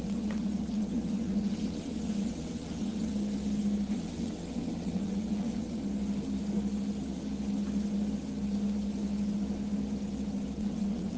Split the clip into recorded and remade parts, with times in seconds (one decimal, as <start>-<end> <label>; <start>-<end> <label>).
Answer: 0.0-3.1 remade; 3.1-3.9 recorded; 3.9-5.8 remade; 5.8-10.6 recorded; 10.6-11.2 remade